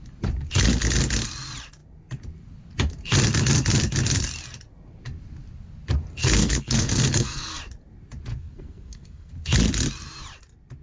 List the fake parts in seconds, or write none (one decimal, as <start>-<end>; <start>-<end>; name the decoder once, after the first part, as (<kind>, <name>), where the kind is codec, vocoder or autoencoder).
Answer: 6.2-7.6 (codec, SNAC); 8.3-9.3